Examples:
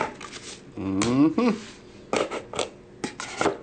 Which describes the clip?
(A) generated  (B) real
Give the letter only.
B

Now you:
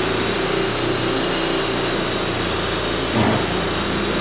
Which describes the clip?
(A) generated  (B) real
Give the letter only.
B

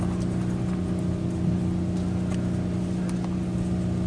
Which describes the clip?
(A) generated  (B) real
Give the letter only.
A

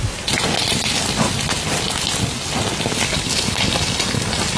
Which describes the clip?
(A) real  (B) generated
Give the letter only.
A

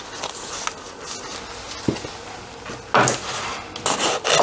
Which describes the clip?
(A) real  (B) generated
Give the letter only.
A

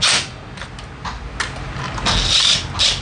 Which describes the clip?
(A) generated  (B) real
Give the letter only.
B